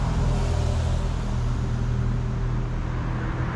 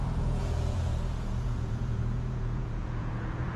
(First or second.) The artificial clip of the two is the second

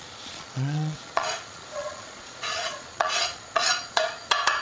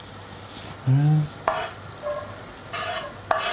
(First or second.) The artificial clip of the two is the first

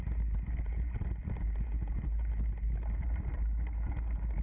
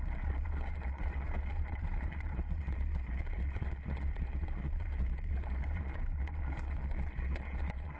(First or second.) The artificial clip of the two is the second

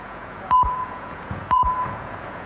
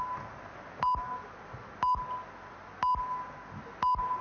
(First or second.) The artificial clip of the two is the first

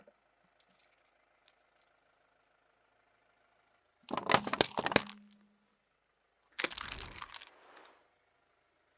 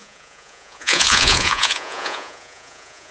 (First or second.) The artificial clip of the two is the second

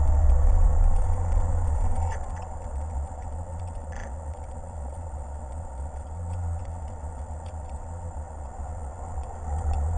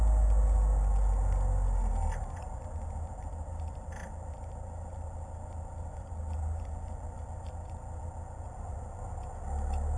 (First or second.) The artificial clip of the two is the first